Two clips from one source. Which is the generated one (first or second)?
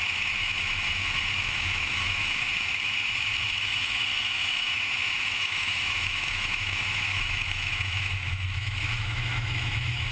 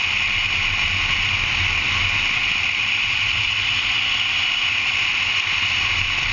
first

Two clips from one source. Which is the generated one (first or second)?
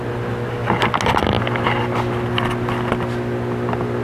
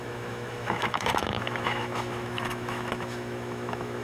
second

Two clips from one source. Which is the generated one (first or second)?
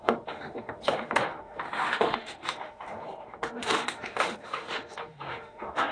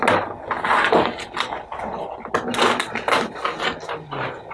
first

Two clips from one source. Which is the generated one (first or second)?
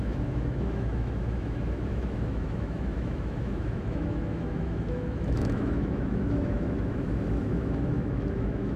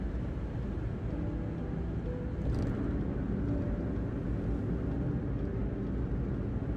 first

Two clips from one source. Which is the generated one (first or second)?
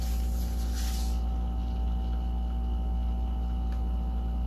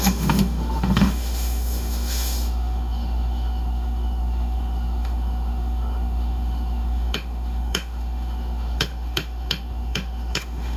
second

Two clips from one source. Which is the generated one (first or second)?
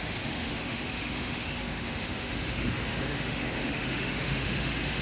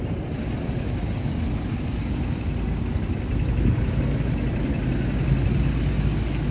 first